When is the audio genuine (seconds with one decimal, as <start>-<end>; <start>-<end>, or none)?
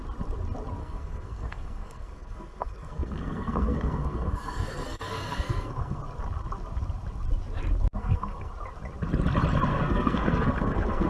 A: 0.0-0.8; 6.0-8.0; 8.5-9.7